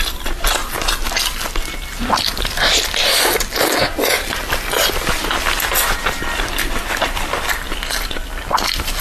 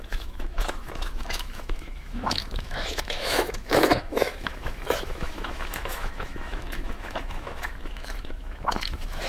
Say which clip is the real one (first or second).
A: first